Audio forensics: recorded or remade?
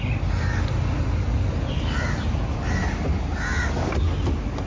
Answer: recorded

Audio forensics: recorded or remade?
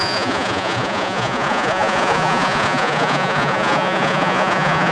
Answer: remade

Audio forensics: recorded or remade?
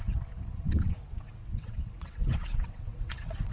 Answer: remade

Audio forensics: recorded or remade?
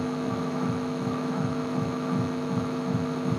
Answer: remade